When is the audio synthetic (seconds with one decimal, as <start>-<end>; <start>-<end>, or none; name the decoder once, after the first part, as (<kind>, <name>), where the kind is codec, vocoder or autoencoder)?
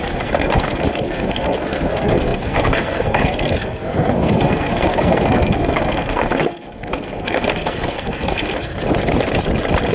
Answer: 0.0-8.7 (codec, SNAC)